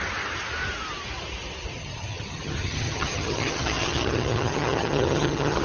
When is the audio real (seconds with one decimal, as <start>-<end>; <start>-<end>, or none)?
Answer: 0.0-1.8